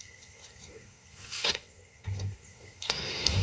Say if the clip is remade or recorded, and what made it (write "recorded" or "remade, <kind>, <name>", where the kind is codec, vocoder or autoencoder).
remade, codec, SNAC